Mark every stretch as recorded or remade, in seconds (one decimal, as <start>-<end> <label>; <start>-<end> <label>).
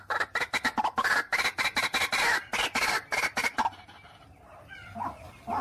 0.0-5.6 recorded